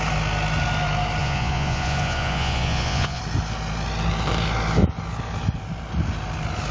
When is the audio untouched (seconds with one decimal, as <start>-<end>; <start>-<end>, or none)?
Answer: 0.0-1.2; 3.2-6.7